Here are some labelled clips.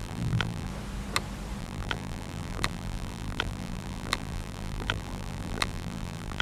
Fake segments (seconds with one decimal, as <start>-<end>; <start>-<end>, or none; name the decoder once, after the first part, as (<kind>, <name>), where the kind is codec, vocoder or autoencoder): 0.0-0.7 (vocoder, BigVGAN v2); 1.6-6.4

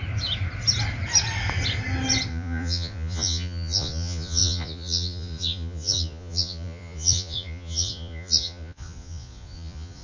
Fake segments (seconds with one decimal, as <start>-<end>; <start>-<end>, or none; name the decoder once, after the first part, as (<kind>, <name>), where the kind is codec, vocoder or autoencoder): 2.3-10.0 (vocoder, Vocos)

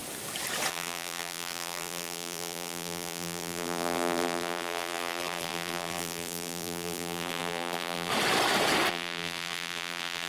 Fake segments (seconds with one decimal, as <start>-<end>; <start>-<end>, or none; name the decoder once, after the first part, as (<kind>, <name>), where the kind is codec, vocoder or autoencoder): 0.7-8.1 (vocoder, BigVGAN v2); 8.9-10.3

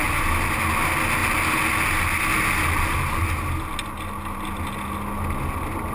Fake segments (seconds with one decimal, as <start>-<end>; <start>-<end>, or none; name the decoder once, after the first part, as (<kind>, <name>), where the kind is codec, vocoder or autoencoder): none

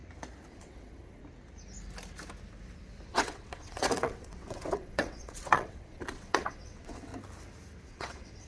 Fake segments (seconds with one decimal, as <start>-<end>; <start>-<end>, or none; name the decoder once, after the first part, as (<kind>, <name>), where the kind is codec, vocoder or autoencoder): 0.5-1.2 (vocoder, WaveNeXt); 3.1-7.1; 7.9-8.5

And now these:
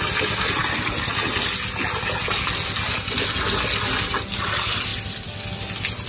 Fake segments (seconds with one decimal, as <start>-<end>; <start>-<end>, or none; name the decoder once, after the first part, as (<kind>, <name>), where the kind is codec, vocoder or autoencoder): none

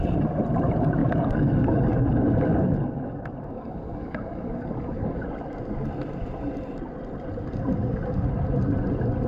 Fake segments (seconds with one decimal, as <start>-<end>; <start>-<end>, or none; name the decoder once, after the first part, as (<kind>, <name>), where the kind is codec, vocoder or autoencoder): 1.0-5.2 (codec, DAC)